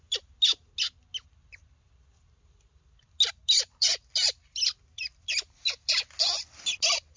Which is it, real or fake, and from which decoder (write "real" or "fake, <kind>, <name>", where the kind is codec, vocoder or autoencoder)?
real